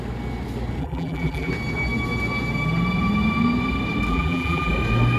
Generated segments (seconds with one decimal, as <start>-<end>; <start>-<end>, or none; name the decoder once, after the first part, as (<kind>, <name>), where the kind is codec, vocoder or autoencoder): 0.8-1.5 (vocoder, BigVGAN v2); 4.1-4.7